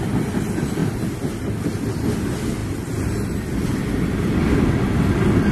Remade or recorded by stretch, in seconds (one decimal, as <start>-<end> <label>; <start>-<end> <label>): 0.0-5.5 recorded

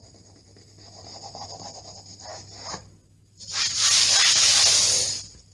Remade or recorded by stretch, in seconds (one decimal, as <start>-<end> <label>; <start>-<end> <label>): 0.0-5.5 recorded

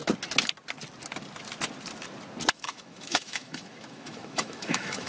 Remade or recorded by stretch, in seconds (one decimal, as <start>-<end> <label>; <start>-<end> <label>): 0.0-2.5 recorded; 2.5-5.1 remade

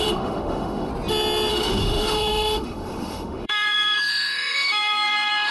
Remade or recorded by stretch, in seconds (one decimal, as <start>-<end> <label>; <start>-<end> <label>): 0.0-0.9 remade; 0.9-1.5 recorded; 1.5-5.5 remade